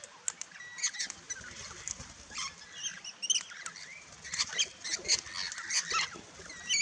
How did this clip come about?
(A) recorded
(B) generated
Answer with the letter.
A